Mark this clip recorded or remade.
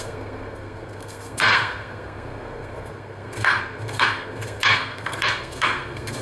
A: remade